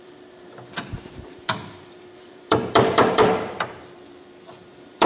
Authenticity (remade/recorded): remade